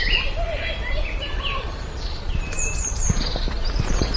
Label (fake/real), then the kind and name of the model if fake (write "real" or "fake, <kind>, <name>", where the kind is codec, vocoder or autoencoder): fake, vocoder, BigVGAN v2